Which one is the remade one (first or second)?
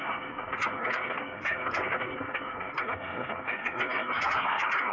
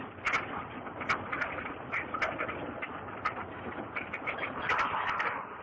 first